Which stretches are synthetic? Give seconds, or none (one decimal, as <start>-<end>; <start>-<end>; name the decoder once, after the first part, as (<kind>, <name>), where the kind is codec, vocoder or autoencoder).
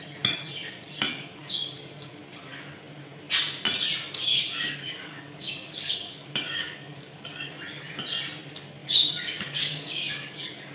1.1-2.1 (codec, DAC); 4.3-7.5; 8.8-10.7